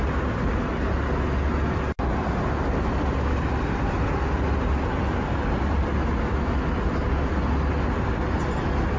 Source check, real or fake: real